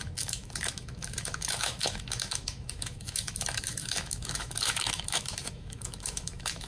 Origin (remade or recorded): remade